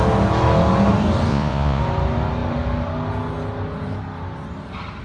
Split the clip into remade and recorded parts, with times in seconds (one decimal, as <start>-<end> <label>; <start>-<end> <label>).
0.0-1.3 recorded; 1.3-1.8 remade; 1.8-5.0 recorded